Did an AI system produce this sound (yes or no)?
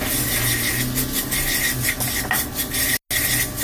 no